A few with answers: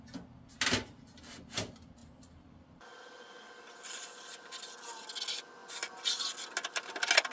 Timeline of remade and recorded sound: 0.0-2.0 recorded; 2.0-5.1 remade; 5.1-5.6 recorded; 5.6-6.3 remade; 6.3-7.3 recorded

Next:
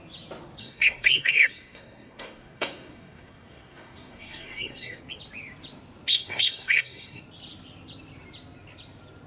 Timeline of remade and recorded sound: 0.0-0.6 recorded; 0.6-5.0 remade; 5.0-6.1 recorded; 6.1-7.2 remade; 7.2-9.3 recorded

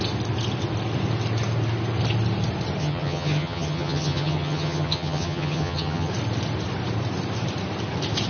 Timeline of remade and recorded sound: 0.0-2.8 recorded; 2.8-6.1 remade; 6.1-8.3 recorded